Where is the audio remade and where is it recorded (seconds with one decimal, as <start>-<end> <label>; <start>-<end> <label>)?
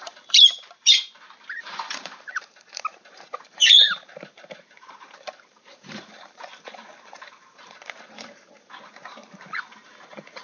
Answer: 0.0-10.4 remade